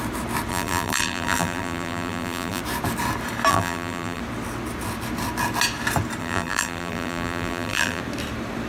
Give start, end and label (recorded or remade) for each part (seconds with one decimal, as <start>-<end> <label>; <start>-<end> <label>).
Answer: 0.0-0.5 recorded; 0.5-2.6 remade; 2.6-3.5 recorded; 3.5-4.2 remade; 4.2-6.2 recorded; 6.2-8.0 remade; 8.0-8.7 recorded